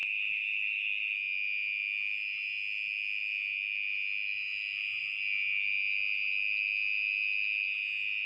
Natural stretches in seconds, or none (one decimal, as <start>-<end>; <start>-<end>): 1.0-8.3